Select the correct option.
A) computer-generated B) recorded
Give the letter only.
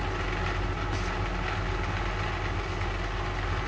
B